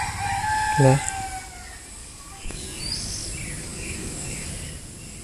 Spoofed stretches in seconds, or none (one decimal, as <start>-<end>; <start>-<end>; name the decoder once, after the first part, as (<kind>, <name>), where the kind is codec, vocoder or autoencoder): 2.0-2.8 (codec, DAC); 3.7-4.5